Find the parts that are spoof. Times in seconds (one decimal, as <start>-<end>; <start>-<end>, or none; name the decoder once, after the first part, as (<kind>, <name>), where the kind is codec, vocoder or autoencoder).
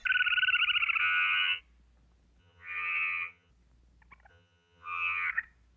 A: 1.0-1.6 (vocoder, HiFi-GAN); 2.4-3.5; 4.3-5.3